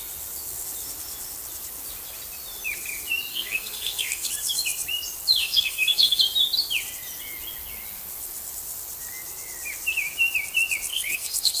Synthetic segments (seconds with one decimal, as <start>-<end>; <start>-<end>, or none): 3.3-4.3; 5.4-6.2; 10.9-11.6